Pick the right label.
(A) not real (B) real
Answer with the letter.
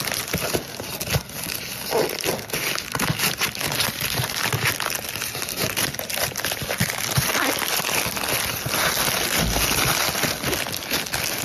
B